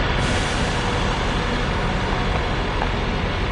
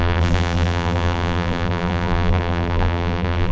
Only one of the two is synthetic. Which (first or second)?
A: second